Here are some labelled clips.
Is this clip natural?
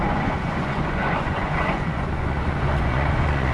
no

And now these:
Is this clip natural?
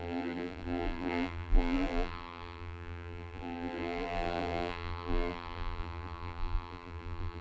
no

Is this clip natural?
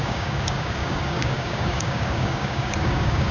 no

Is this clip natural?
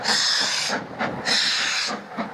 yes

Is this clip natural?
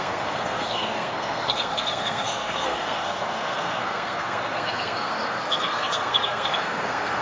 no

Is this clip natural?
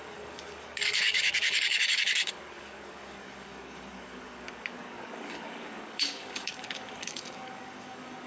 no